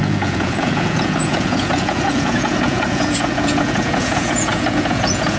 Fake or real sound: fake